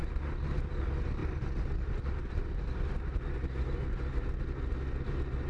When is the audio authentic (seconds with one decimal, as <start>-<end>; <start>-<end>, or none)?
0.0-5.5